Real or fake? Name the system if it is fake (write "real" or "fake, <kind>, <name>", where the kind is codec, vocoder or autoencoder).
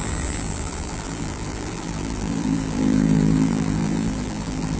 fake, vocoder, BigVGAN v2